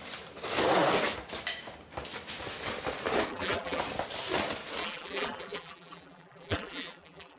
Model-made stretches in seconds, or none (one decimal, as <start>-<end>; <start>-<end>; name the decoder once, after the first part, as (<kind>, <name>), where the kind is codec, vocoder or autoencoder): 3.3-3.8 (vocoder, BigVGAN v2); 4.8-7.4